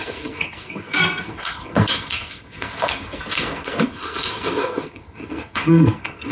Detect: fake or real fake